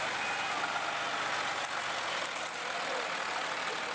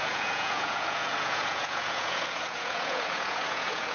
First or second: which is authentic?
first